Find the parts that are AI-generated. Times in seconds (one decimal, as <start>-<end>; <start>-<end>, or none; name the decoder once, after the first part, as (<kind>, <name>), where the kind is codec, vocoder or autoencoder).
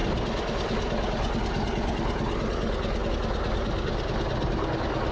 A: none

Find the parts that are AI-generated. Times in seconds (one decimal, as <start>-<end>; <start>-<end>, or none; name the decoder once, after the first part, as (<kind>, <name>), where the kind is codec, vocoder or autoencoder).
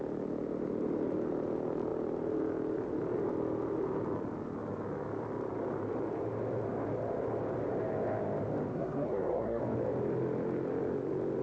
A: 8.7-9.6 (codec, SNAC)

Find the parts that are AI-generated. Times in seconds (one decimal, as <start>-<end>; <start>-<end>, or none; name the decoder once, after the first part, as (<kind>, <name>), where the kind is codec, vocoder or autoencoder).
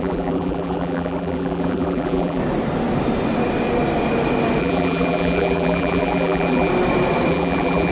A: 0.0-2.4 (vocoder, BigVGAN v2); 4.6-6.7; 7.3-7.9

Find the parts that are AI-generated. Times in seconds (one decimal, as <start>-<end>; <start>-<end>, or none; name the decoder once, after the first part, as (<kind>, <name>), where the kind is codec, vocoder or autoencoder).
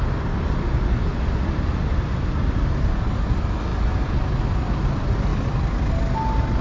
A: 5.3-5.9 (vocoder, BigVGAN v2)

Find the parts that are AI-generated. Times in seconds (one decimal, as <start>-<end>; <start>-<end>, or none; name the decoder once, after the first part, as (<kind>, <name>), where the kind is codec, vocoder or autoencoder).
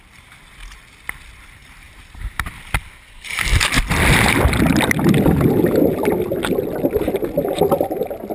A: 1.6-2.5 (vocoder, BigVGAN v2)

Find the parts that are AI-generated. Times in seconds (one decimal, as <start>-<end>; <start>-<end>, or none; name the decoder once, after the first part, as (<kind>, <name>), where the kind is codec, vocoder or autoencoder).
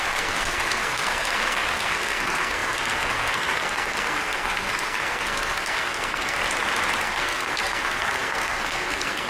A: 0.0-6.4 (codec, SNAC); 7.0-9.3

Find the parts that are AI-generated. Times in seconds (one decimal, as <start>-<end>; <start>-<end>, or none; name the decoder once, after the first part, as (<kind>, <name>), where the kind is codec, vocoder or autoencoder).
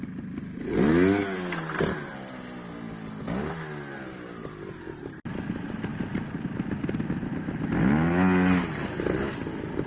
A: none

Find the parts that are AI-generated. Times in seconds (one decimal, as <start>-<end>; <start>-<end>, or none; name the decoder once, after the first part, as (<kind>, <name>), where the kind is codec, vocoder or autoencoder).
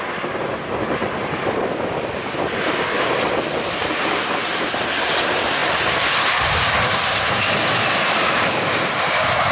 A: none